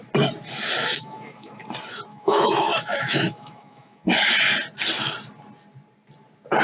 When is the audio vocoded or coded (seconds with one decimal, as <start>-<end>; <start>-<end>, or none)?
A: 0.8-1.6; 2.1-4.3